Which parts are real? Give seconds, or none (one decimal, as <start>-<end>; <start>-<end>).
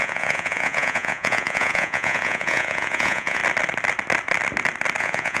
3.4-5.0